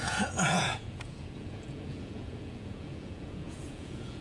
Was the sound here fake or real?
fake